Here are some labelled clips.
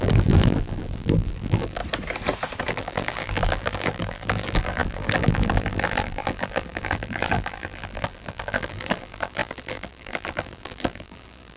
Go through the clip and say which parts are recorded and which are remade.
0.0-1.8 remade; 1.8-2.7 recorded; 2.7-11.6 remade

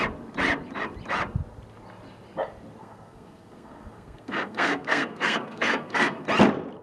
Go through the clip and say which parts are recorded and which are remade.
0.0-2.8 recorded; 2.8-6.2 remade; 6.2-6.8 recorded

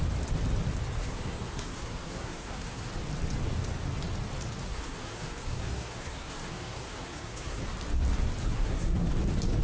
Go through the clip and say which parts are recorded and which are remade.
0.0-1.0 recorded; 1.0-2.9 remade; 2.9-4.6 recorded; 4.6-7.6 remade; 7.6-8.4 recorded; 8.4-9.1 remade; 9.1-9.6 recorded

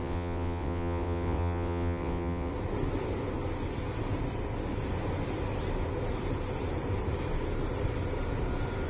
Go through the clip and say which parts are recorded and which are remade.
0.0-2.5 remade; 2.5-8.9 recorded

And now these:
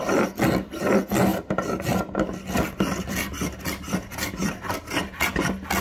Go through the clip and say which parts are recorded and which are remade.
0.0-5.8 recorded

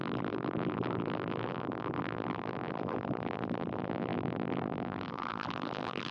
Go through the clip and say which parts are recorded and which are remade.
0.0-6.1 remade

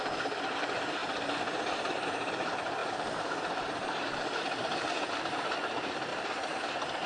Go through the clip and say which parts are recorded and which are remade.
0.0-1.0 remade; 1.0-1.9 recorded; 1.9-6.1 remade; 6.1-7.1 recorded